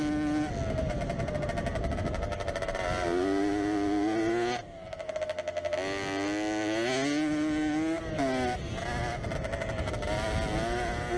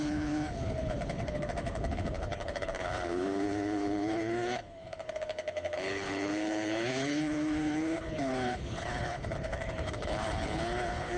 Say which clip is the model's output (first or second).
second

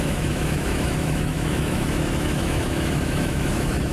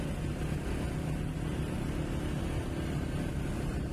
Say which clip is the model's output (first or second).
first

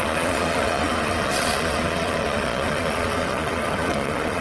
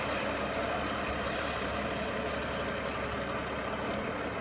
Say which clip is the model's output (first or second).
first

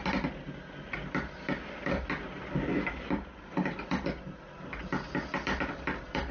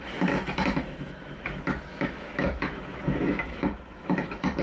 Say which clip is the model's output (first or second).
second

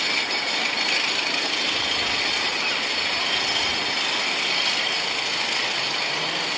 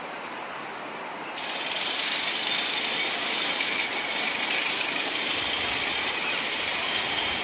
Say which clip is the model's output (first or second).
second